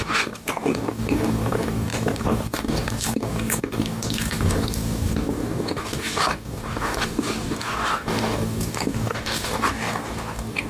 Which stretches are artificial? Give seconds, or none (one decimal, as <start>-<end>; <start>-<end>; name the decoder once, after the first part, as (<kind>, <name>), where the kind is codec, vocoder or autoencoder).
0.0-10.7 (codec, DAC)